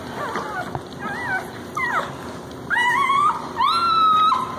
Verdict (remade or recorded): recorded